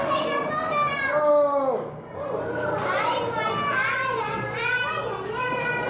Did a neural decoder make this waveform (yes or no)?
no